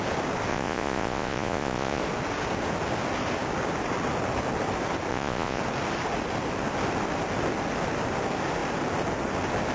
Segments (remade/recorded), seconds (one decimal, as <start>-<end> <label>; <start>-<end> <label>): 0.0-0.5 recorded; 0.5-2.0 remade; 2.0-5.1 recorded; 5.1-5.6 remade; 5.6-9.7 recorded